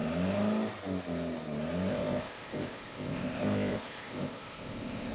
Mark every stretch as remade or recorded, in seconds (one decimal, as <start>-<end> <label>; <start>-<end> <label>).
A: 0.0-1.9 recorded; 1.9-5.1 remade